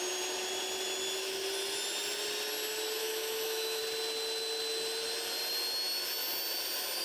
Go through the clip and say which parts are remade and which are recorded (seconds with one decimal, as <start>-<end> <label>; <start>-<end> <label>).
0.0-3.0 recorded; 3.0-3.8 remade; 3.8-7.0 recorded